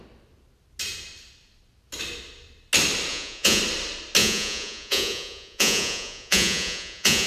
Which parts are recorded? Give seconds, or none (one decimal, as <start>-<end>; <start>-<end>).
0.0-3.1; 3.6-4.2